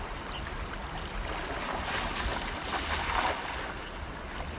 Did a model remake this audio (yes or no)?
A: no